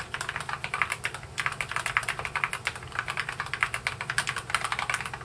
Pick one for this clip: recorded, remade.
recorded